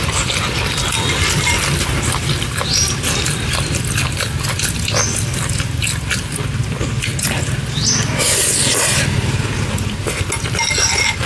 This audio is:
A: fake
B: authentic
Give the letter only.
B